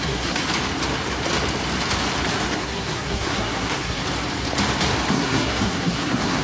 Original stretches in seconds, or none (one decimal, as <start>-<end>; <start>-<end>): 0.4-2.6; 4.0-5.1